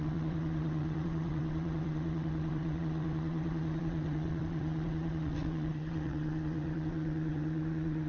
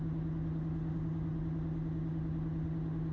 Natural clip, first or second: second